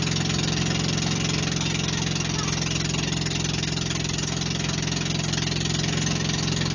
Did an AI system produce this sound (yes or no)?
no